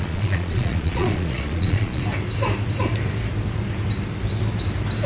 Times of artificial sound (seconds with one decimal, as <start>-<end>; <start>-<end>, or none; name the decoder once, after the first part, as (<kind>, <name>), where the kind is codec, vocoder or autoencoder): 0.0-2.0 (vocoder, Vocos)